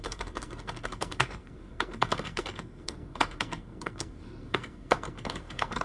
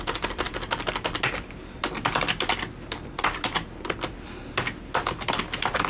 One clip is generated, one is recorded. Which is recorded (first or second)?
second